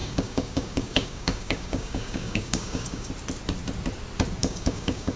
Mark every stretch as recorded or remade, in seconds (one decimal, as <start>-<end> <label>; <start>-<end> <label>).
0.0-3.1 remade; 3.1-4.4 recorded; 4.4-5.2 remade